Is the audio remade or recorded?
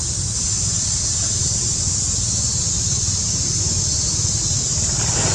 recorded